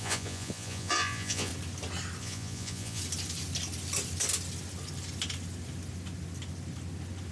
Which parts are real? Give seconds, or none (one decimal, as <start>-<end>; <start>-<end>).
1.5-2.2; 3.0-7.3